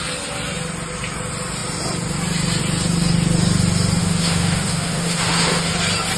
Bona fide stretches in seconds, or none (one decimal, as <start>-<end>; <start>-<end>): 0.0-4.0; 5.7-6.2